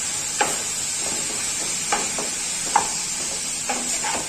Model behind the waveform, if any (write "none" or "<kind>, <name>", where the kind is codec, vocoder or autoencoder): none